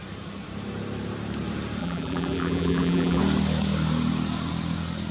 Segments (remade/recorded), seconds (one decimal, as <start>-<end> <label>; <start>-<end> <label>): 0.0-1.8 recorded; 1.8-3.2 remade; 3.2-5.1 recorded